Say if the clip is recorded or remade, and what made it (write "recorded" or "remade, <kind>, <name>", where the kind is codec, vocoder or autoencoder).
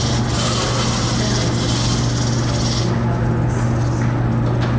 recorded